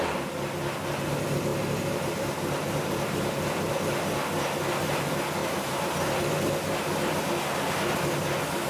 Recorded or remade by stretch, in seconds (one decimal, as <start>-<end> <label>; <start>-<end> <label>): 0.0-1.5 recorded; 1.5-3.8 remade; 3.8-5.4 recorded; 5.4-6.2 remade; 6.2-8.7 recorded